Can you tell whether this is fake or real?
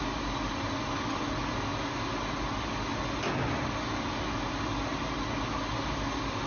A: real